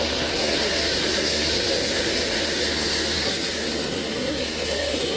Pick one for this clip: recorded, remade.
remade